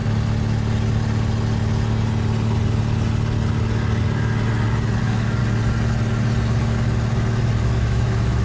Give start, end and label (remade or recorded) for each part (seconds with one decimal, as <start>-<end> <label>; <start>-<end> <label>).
0.0-5.0 recorded; 5.0-5.4 remade; 5.4-7.6 recorded; 7.6-8.4 remade